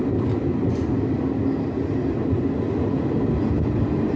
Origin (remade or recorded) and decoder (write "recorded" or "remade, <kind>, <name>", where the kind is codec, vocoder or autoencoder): recorded